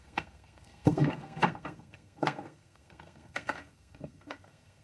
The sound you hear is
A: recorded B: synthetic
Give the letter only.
B